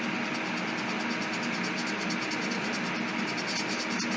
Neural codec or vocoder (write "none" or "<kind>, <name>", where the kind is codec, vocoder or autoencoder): none